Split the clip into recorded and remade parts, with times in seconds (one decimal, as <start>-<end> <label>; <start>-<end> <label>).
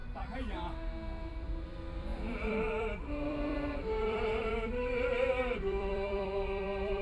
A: 0.0-1.3 recorded; 1.3-7.0 remade